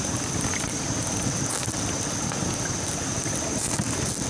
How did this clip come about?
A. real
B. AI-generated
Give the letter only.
A